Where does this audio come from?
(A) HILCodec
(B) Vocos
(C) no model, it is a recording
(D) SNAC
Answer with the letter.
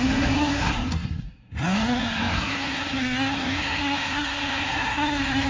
D